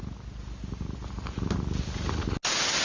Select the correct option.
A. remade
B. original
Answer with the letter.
B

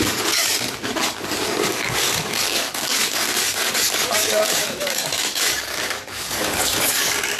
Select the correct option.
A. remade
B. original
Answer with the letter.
A